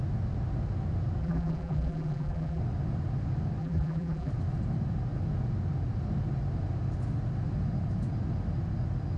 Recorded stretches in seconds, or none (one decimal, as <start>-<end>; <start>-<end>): 0.0-1.2; 2.6-3.6; 4.3-9.2